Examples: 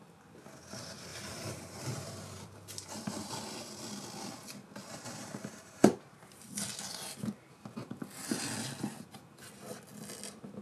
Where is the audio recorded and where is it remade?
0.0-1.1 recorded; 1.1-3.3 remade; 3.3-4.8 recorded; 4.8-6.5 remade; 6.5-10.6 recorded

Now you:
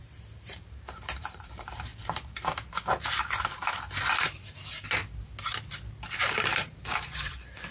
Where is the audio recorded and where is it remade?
0.0-1.9 remade; 1.9-3.0 recorded; 3.0-3.6 remade; 3.6-4.2 recorded; 4.2-5.0 remade; 5.0-6.2 recorded; 6.2-7.7 remade